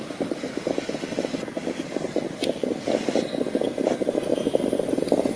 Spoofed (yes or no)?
no